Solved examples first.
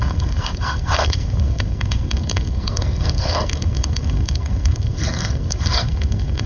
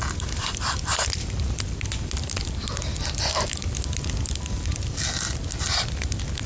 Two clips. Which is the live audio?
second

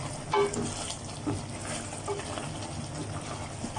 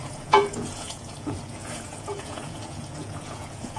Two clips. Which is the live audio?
first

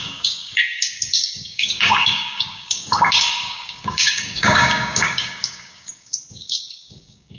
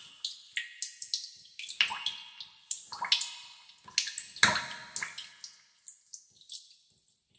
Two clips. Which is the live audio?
second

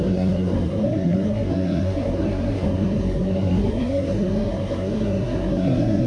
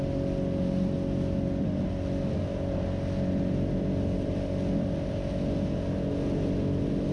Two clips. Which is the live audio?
second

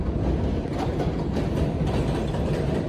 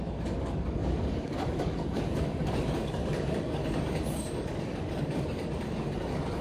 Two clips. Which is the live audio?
first